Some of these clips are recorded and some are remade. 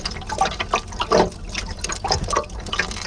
recorded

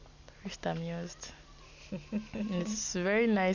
recorded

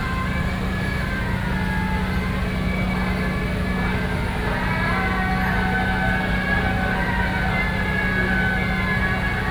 recorded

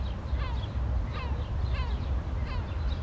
recorded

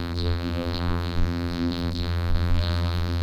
remade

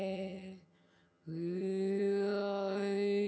remade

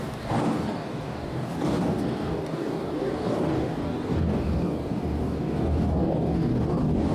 remade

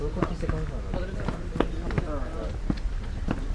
recorded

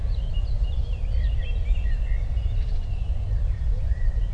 recorded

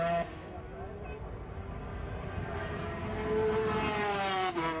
recorded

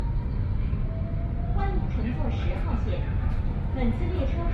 recorded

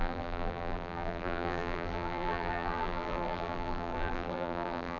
remade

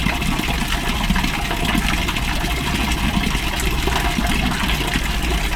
recorded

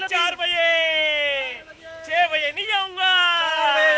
remade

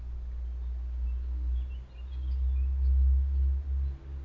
recorded